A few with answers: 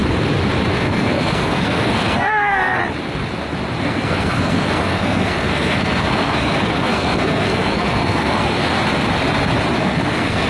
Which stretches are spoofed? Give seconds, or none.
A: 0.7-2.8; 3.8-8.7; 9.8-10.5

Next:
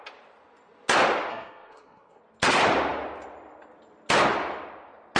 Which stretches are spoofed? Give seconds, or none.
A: 1.3-2.2

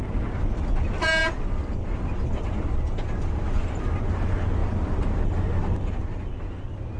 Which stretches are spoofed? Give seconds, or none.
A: none

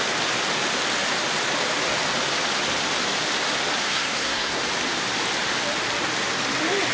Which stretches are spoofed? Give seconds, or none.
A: 3.8-4.6